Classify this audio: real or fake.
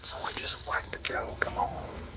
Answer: fake